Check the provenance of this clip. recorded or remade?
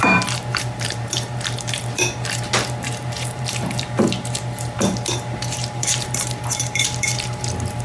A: remade